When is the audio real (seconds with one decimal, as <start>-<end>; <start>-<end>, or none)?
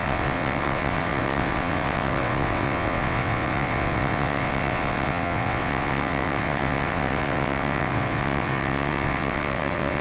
none